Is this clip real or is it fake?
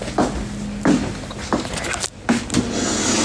real